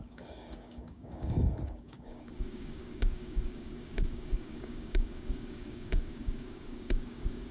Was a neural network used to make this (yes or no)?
yes